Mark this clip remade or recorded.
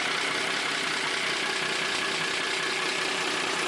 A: recorded